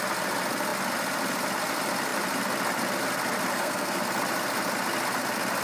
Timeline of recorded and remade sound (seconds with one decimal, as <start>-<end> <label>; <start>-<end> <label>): 0.0-3.5 recorded; 3.5-4.0 remade; 4.0-5.6 recorded